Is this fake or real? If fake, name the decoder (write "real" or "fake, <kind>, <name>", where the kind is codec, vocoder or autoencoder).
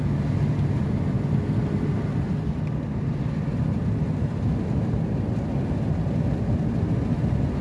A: real